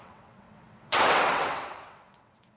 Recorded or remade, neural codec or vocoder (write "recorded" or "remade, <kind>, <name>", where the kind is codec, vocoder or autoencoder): remade, vocoder, WaveNeXt